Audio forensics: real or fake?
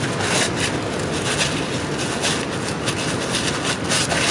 real